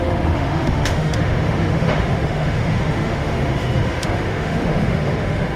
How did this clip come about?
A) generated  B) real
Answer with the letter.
A